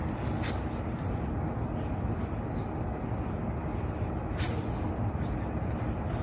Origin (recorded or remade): recorded